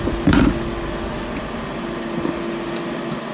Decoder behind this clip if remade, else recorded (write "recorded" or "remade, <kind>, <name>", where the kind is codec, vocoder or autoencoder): recorded